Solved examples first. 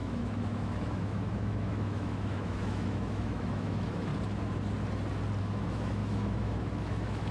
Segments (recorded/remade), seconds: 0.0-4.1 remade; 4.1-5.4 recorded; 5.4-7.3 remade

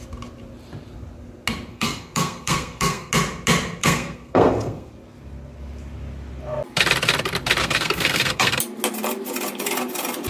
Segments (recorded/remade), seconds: 0.0-1.7 recorded; 1.7-3.1 remade; 3.1-3.8 recorded; 3.8-4.9 remade; 4.9-7.6 recorded; 7.6-8.6 remade; 8.6-10.3 recorded

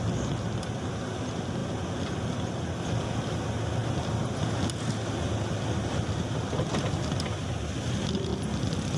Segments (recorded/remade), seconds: 0.0-9.0 recorded

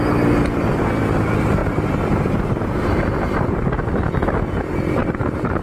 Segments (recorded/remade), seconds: 0.0-1.6 recorded; 1.6-3.9 remade; 3.9-5.0 recorded; 5.0-5.6 remade

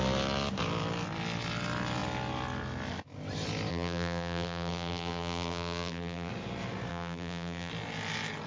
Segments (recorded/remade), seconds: 0.0-3.7 recorded; 3.7-6.3 remade; 6.3-6.9 recorded; 6.9-7.7 remade; 7.7-8.5 recorded

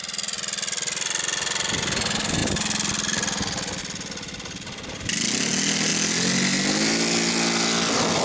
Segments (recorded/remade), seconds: 0.0-8.2 recorded

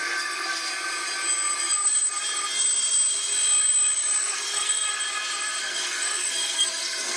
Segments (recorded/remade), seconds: 0.0-0.7 remade; 0.7-4.2 recorded; 4.2-5.0 remade; 5.0-5.6 recorded; 5.6-7.2 remade

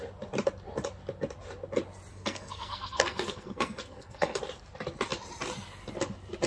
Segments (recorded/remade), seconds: 0.0-2.1 recorded; 2.1-4.4 remade; 4.4-6.5 recorded